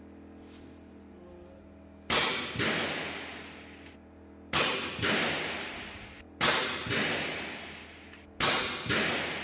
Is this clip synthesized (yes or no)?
no